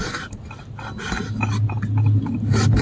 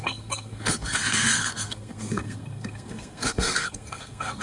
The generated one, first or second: second